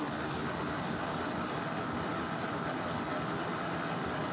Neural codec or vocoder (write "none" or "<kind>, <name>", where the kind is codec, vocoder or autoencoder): none